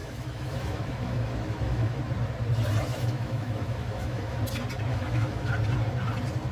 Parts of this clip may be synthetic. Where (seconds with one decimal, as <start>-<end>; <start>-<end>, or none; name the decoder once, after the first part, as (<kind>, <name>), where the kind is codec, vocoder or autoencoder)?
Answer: 0.0-2.0 (autoencoder, DAC-VAE); 2.9-4.4; 4.9-5.5